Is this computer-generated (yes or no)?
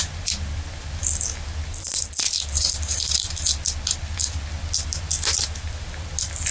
no